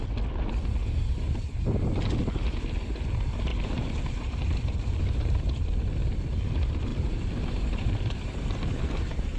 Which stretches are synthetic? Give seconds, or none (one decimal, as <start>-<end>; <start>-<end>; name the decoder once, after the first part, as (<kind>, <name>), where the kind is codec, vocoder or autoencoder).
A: 0.8-1.5 (vocoder, BigVGAN v2); 3.5-6.1; 6.9-9.4

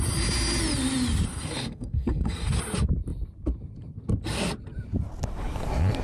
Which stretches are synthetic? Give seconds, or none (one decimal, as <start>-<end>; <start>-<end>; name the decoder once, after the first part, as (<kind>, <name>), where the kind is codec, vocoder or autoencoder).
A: 1.3-2.5 (codec, SNAC)

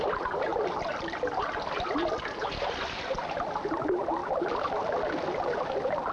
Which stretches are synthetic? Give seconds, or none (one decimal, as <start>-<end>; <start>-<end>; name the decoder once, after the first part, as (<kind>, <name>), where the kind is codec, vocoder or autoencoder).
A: 4.2-6.1 (vocoder, BigVGAN v2)

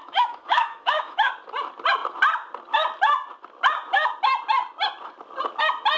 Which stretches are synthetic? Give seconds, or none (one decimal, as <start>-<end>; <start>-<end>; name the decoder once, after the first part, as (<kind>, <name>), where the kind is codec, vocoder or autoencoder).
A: 0.0-1.3 (autoencoder, DAC-VAE)

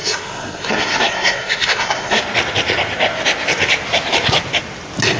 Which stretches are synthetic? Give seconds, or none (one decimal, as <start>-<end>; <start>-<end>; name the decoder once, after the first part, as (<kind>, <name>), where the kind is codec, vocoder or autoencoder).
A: 0.0-2.2 (codec, SNAC)

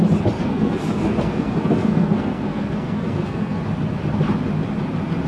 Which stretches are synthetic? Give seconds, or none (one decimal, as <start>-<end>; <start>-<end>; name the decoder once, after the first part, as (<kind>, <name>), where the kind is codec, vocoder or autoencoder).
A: 0.4-3.6 (codec, SNAC)

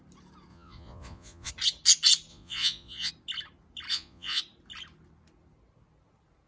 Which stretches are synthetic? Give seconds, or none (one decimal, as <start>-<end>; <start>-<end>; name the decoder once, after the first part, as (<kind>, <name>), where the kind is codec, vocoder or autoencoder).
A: 0.5-1.5 (vocoder, Vocos); 2.3-3.1; 3.9-4.4